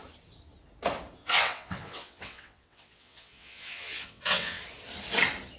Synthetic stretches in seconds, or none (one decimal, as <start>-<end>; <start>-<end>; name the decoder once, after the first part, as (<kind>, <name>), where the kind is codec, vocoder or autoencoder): 1.2-4.6 (vocoder, WaveNeXt)